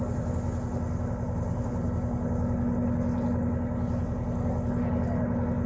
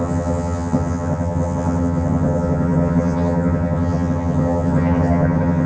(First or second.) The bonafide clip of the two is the first